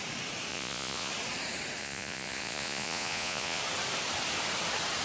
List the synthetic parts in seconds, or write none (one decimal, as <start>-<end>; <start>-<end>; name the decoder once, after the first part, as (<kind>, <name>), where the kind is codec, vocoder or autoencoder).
0.5-1.1 (vocoder, Vocos); 1.8-3.6